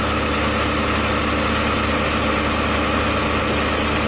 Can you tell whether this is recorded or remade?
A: recorded